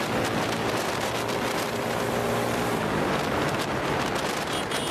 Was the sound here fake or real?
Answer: real